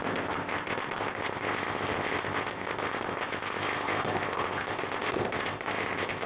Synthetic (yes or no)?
yes